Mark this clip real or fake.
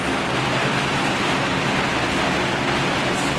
real